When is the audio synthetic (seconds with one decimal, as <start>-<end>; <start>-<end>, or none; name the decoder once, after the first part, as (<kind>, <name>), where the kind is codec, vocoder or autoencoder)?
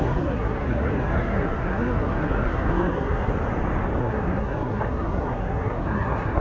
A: 0.0-3.3 (codec, SNAC); 4.0-6.4